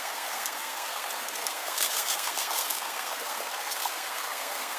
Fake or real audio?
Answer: fake